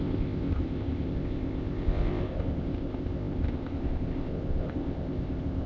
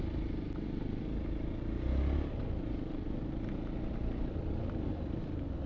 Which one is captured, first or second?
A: second